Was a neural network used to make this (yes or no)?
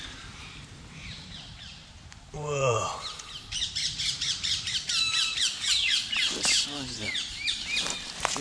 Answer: yes